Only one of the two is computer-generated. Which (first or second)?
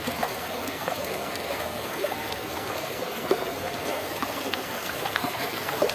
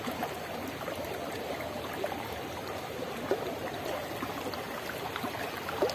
first